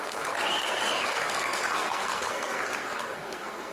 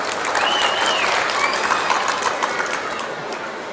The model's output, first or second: first